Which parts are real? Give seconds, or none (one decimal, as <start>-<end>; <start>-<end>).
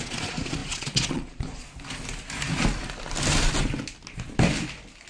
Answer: 1.6-5.1